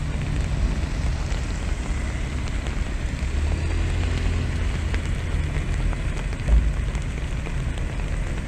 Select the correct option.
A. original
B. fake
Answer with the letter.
A